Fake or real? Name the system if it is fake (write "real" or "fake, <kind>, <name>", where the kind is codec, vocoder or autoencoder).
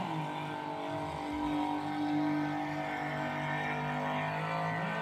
real